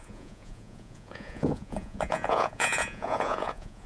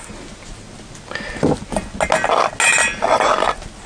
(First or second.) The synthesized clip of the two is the first